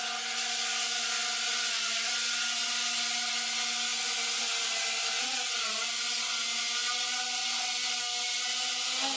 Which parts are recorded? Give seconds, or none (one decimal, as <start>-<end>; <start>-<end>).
0.0-9.2